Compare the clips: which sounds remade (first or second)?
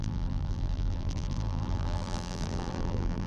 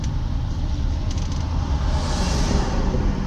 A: first